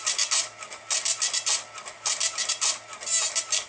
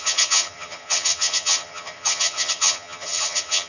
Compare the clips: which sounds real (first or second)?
first